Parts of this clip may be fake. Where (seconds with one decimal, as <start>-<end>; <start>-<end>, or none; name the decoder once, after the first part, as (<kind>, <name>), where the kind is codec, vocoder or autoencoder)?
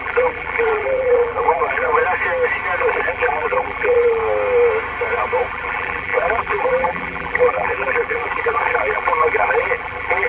0.0-2.0 (vocoder, BigVGAN v2); 2.8-4.2; 5.5-10.3